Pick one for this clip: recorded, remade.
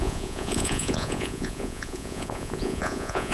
remade